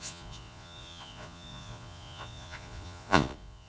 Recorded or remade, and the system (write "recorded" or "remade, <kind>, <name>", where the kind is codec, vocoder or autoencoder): remade, vocoder, Vocos